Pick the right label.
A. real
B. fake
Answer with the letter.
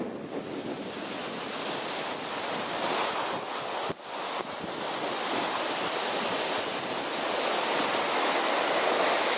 A